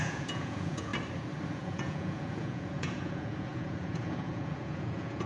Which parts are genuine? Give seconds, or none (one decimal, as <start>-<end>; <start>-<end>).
0.9-1.5